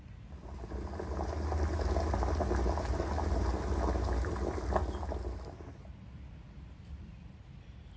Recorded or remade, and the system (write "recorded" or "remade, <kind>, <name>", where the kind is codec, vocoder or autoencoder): recorded